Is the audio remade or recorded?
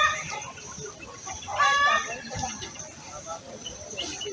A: recorded